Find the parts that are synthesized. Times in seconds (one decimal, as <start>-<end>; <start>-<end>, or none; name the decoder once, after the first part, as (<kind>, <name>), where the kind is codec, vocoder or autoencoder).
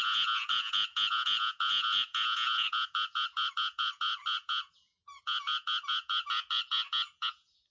0.0-7.7 (vocoder, Vocos)